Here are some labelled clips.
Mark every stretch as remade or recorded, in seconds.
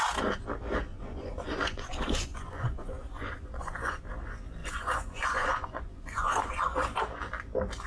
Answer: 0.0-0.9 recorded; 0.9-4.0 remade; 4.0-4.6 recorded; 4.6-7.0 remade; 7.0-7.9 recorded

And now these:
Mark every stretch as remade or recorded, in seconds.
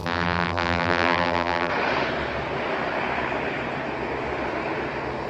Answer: 0.0-1.7 remade; 1.7-5.3 recorded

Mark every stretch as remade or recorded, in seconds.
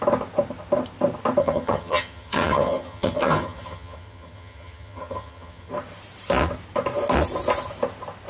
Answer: 0.0-1.4 recorded; 1.4-5.7 remade; 5.7-8.3 recorded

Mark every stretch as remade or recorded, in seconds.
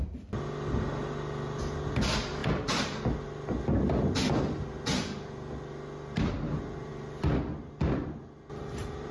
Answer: 0.0-9.1 recorded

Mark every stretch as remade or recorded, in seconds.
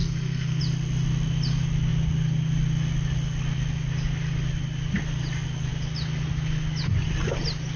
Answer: 0.0-0.6 remade; 0.6-7.8 recorded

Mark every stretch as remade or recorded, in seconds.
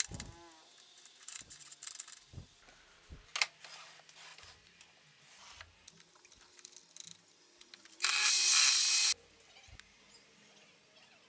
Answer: 0.0-11.3 recorded